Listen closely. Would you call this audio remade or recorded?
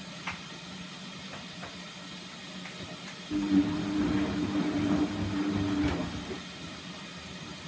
recorded